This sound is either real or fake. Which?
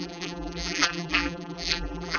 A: fake